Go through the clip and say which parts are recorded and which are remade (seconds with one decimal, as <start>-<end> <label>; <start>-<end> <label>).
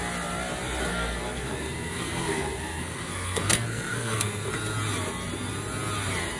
0.0-0.9 recorded; 0.9-4.5 remade; 4.5-6.4 recorded